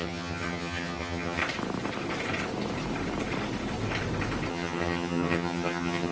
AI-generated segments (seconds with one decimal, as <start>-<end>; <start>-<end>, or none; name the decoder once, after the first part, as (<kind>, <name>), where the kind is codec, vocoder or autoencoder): 0.0-1.4 (vocoder, HiFi-GAN); 4.5-6.1